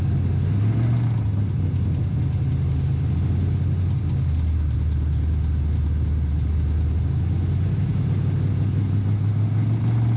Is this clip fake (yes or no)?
no